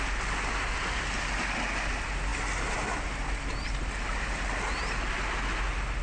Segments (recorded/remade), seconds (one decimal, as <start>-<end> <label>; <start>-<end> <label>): 0.0-6.0 recorded